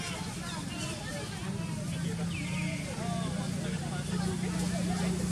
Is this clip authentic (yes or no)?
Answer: yes